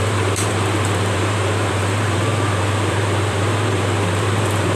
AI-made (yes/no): yes